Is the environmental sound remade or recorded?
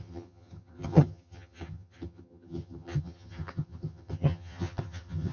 remade